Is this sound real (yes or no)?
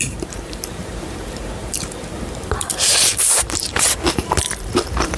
no